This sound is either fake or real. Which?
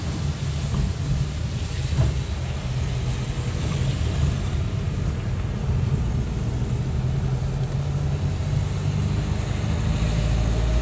real